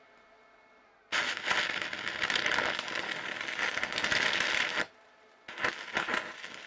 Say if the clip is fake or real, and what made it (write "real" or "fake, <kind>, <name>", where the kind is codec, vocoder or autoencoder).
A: real